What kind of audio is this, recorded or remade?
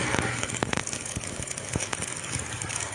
remade